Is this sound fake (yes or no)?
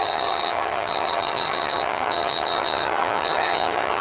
yes